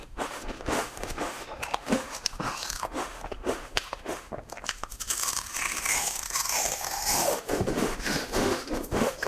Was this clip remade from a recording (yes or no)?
yes